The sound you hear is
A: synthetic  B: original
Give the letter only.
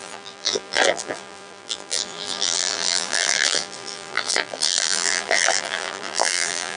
A